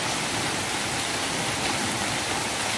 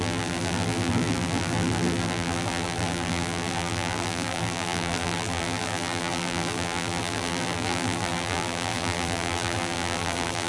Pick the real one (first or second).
first